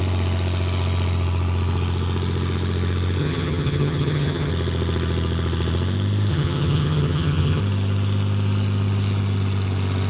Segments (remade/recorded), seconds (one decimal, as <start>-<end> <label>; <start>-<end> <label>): 0.0-3.2 recorded; 3.2-4.5 remade; 4.5-6.3 recorded; 6.3-7.6 remade; 7.6-10.1 recorded